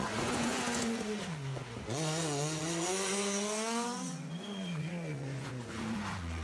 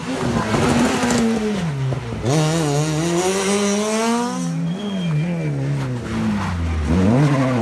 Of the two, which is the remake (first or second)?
first